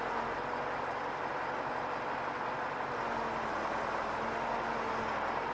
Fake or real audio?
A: real